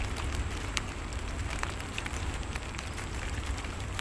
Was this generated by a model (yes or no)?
yes